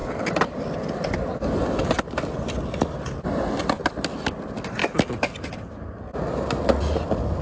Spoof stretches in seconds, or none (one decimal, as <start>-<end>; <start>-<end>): none